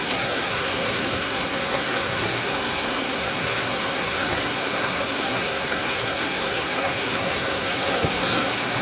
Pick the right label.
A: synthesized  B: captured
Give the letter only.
A